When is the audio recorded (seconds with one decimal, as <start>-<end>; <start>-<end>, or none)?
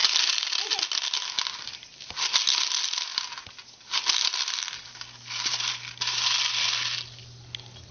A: 0.0-7.9